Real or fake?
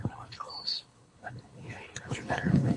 fake